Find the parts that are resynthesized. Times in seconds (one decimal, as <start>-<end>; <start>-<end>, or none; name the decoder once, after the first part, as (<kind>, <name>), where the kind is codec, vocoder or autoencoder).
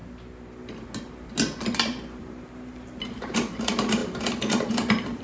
3.1-4.0 (vocoder, BigVGAN v2); 4.7-5.2